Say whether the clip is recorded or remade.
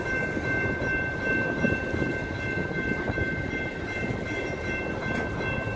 recorded